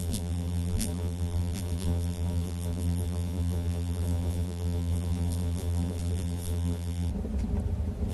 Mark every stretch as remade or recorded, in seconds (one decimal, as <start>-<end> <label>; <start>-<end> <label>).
0.0-7.1 remade; 7.1-8.1 recorded